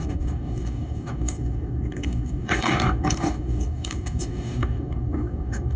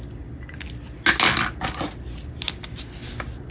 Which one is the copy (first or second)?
first